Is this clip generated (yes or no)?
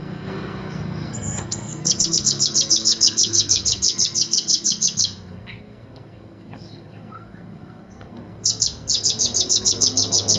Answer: yes